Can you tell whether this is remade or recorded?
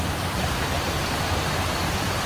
recorded